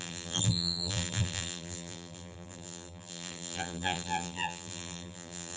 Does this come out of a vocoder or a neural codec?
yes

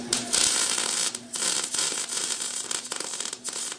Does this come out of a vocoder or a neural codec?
yes